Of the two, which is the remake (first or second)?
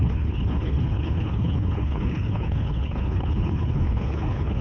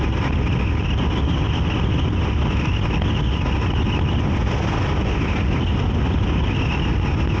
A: first